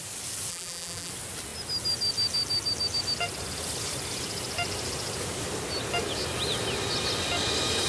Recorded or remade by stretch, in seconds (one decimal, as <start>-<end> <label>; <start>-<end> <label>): 0.0-0.5 recorded; 0.5-1.1 remade; 1.1-7.9 recorded

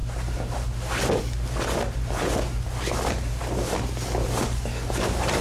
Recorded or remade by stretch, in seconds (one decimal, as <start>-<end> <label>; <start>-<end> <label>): 0.0-5.4 recorded

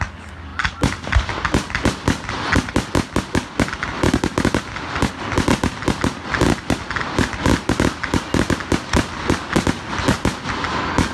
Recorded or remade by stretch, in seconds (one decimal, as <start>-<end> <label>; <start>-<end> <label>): 0.0-11.1 recorded